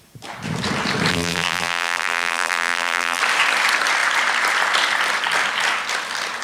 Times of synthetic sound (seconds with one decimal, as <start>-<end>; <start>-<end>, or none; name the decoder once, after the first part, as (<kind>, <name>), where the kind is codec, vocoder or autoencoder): 1.1-3.2 (vocoder, BigVGAN v2)